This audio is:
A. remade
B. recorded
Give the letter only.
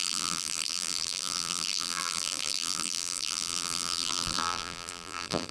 A